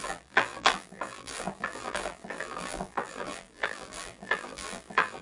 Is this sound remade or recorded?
remade